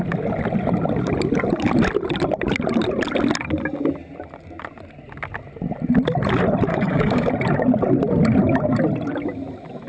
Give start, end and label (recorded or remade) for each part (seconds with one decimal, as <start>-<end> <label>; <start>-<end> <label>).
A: 0.0-6.7 recorded; 6.7-7.3 remade; 7.3-9.9 recorded